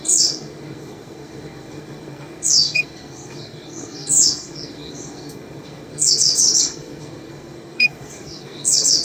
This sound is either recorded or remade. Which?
remade